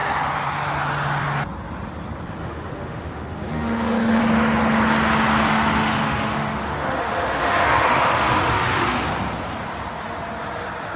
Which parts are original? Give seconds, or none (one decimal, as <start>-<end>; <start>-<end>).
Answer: 0.0-2.4; 4.2-5.5; 9.1-11.0